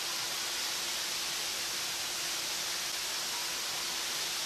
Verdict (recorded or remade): recorded